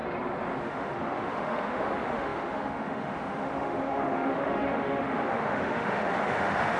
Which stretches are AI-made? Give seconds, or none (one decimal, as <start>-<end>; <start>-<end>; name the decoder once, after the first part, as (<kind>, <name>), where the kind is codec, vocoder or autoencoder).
0.6-6.8 (autoencoder, DAC-VAE)